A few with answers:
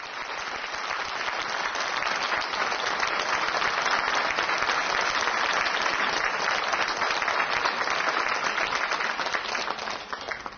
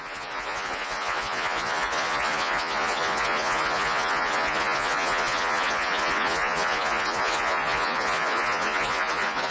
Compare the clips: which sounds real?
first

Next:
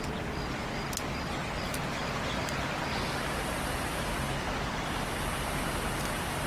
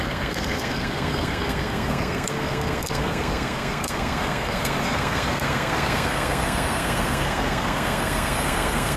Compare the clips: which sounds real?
first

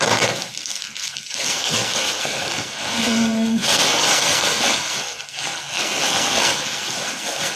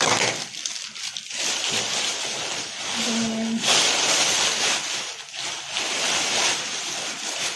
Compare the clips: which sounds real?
second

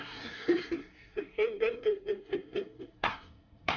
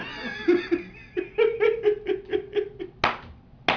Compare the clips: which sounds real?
second